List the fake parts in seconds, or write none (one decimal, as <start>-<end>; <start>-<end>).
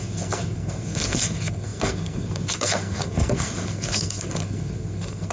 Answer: 0.0-5.3